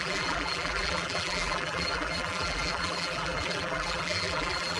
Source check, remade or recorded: remade